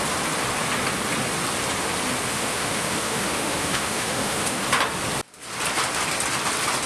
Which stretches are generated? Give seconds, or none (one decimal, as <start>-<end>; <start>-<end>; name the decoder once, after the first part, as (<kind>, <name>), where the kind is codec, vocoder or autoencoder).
2.3-4.6 (autoencoder, DAC-VAE)